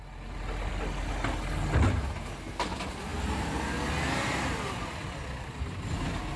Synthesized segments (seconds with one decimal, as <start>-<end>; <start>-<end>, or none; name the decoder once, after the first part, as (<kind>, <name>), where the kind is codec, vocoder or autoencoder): none